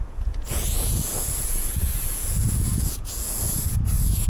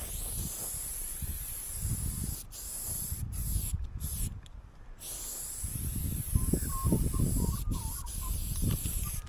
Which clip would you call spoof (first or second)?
first